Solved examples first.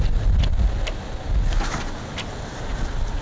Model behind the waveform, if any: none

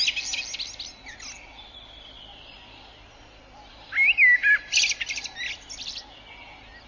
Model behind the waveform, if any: none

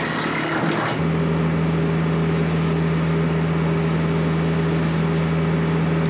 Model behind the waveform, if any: none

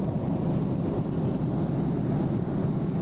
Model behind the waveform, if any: none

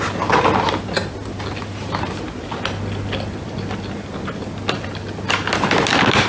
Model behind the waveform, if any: none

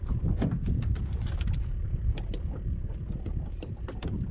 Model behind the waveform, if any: none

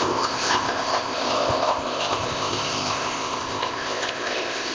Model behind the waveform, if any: codec, ZipCodec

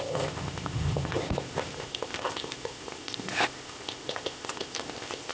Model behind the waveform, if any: codec, ZipCodec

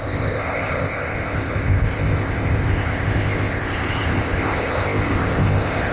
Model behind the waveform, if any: codec, ZipCodec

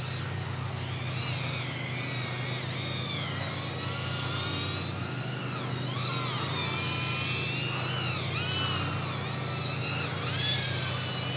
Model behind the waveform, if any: none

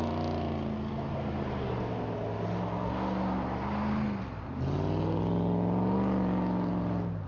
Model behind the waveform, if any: none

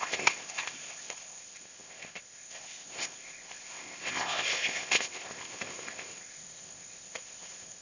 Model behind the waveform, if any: codec, ZipCodec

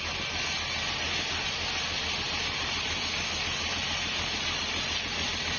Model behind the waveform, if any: none